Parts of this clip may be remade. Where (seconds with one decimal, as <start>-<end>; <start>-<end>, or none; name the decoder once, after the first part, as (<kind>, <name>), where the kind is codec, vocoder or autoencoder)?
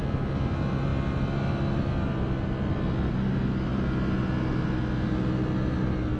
none